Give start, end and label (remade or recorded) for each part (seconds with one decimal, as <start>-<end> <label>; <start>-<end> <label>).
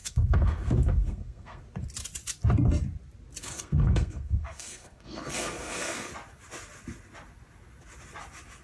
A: 0.0-1.6 remade; 1.6-3.4 recorded; 3.4-6.1 remade; 6.1-8.6 recorded